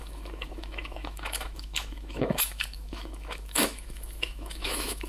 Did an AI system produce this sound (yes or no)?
yes